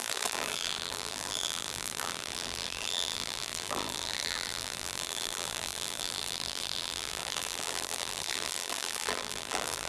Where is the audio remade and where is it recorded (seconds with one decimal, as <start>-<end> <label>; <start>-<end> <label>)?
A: 0.0-9.9 remade